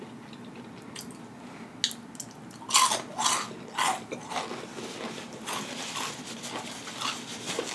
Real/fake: real